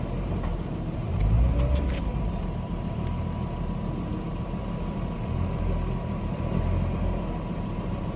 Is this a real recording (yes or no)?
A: no